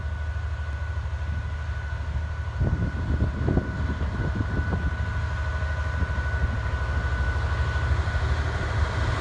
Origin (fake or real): real